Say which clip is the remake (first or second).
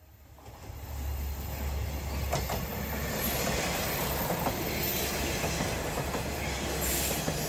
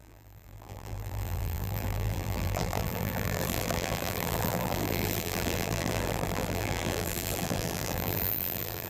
second